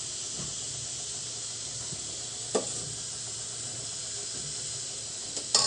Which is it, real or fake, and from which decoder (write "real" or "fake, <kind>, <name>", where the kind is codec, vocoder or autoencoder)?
real